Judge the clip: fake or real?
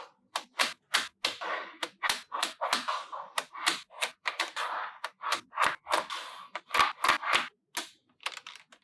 real